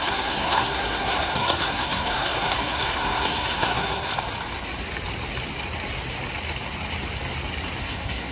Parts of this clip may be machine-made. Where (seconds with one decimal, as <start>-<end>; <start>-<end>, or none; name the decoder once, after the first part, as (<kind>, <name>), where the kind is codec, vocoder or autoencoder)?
0.0-4.1 (codec, SNAC); 7.8-8.3